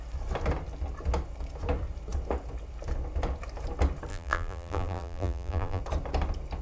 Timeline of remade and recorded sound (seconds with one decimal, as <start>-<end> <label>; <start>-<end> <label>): 0.0-4.1 recorded; 4.1-5.8 remade; 5.8-6.6 recorded

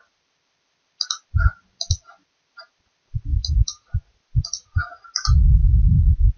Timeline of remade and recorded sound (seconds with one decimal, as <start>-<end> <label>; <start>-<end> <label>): 0.0-6.4 recorded